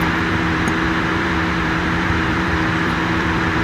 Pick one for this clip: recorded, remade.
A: remade